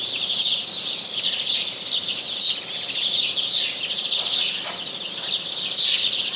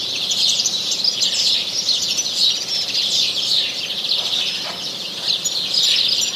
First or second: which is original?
first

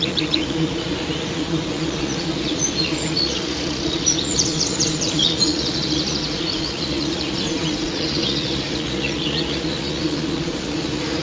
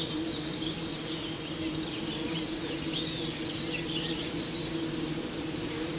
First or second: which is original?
second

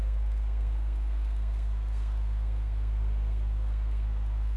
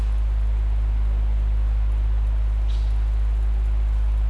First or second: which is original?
second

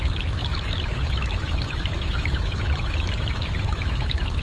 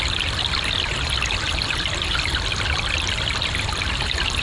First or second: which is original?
second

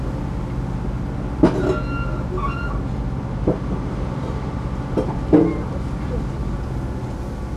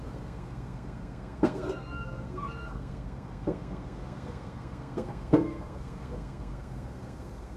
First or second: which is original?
first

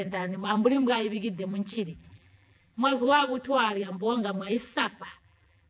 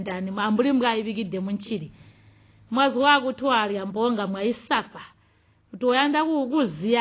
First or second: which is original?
second